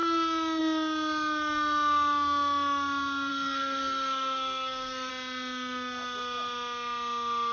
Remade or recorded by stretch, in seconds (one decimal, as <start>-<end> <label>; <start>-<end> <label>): 0.0-3.3 recorded; 3.3-5.1 remade; 5.1-7.5 recorded